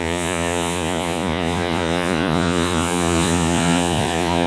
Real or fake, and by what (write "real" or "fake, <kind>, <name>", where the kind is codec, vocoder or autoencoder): fake, vocoder, Vocos